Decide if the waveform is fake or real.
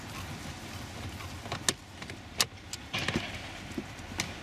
real